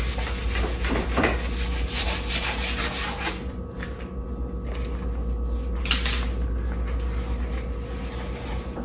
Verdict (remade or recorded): recorded